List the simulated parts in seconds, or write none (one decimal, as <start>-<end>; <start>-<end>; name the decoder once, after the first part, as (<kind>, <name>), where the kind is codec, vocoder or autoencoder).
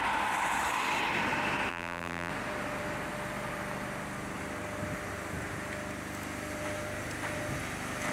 1.7-2.3 (vocoder, BigVGAN v2)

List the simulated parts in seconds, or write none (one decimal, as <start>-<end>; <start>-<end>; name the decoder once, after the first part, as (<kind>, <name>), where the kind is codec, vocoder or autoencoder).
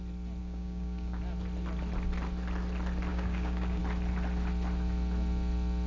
0.4-1.2 (codec, DAC); 3.1-3.8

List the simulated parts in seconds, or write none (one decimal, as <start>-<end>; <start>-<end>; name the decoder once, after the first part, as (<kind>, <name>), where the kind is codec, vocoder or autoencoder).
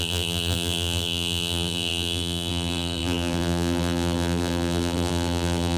0.0-5.8 (vocoder, BigVGAN v2)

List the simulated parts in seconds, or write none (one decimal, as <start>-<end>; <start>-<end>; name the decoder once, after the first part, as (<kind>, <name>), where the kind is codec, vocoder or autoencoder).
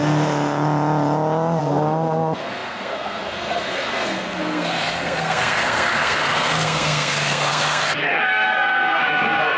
1.6-9.6 (codec, SNAC)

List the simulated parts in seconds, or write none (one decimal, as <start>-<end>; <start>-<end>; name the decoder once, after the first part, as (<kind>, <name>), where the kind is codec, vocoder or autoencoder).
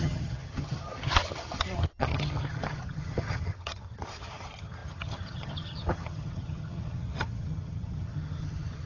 0.0-8.9 (vocoder, HiFi-GAN)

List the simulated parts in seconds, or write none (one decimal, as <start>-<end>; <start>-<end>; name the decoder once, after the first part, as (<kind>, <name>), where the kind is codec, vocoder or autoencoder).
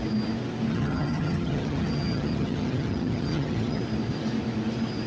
0.7-3.8 (vocoder, HiFi-GAN)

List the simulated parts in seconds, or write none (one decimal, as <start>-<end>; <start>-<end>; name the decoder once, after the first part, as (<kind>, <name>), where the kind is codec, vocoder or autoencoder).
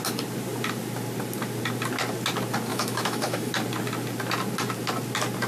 2.7-3.5 (autoencoder, DAC-VAE)